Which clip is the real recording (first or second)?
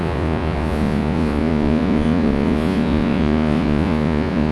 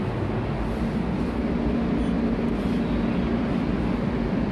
second